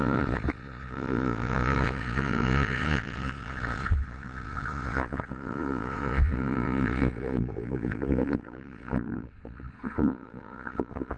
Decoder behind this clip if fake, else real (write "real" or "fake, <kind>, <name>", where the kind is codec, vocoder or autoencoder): fake, vocoder, Vocos